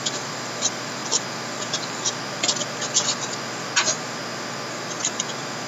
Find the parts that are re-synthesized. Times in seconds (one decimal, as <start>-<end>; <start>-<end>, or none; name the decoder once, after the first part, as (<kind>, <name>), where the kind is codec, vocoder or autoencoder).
none